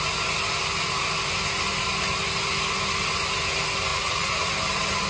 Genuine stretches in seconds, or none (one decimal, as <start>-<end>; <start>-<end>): 0.0-3.9; 4.5-5.1